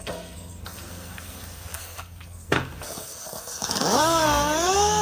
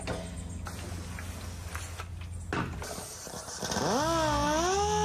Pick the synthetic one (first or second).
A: first